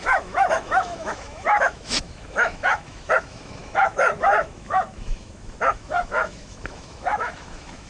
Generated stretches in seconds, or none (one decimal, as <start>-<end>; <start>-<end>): 0.0-7.9